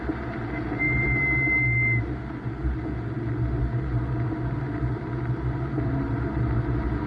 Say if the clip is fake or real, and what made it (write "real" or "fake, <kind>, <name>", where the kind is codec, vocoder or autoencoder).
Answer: real